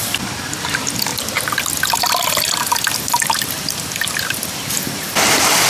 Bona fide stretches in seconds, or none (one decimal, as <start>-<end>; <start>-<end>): 0.0-5.7